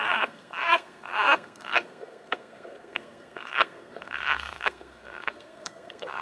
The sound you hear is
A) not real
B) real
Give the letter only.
A